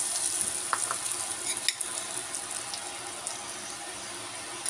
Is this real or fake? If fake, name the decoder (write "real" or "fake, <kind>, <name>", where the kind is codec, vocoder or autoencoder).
real